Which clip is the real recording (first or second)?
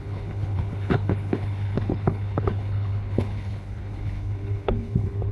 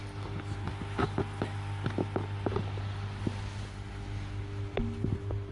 second